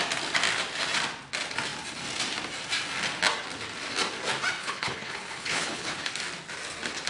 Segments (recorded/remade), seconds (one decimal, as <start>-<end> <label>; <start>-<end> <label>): 0.0-4.6 recorded; 4.6-6.1 remade; 6.1-7.1 recorded